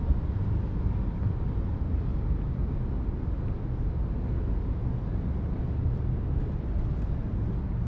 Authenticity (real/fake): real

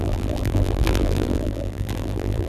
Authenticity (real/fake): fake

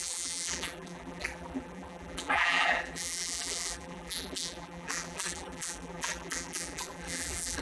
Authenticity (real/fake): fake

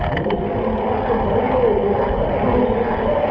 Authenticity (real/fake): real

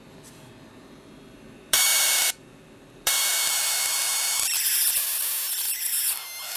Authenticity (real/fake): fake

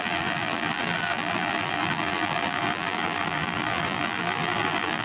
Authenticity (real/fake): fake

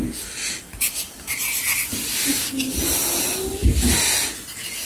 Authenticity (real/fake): real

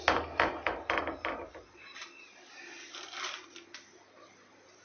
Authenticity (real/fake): real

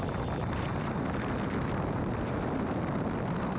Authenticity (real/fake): real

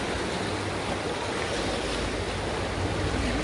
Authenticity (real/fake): real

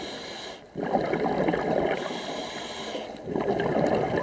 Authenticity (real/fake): fake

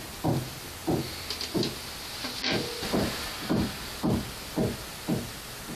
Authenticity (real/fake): real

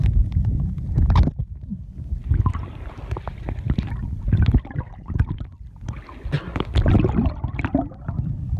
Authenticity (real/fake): real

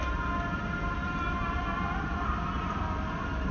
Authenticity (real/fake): real